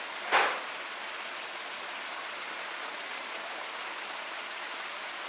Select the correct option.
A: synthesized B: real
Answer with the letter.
B